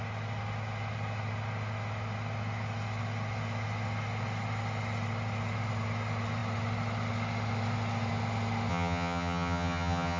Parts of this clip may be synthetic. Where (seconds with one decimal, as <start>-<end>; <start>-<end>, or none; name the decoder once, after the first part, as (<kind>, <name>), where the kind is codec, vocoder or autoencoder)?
8.7-10.2 (vocoder, HiFi-GAN)